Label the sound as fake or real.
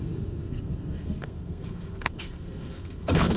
fake